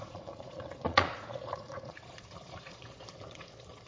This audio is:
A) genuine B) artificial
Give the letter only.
B